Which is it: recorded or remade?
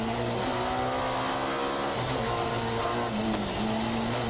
recorded